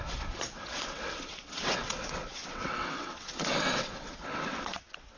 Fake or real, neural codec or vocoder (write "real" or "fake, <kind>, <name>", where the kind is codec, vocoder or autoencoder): fake, vocoder, WaveNeXt